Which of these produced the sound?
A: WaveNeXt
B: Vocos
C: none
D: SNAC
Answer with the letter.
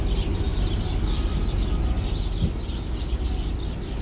C